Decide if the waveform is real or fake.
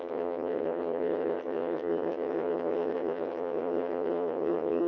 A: fake